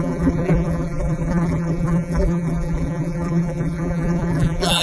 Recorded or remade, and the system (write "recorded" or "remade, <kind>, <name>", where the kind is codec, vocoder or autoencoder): remade, vocoder, BigVGAN v2